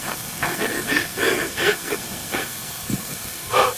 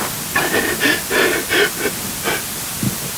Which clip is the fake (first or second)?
first